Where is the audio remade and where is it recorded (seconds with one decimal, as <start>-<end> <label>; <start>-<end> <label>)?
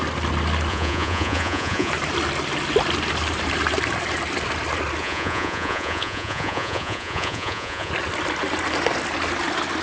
0.0-0.7 recorded; 0.7-1.9 remade; 1.9-5.0 recorded; 5.0-7.9 remade; 7.9-9.8 recorded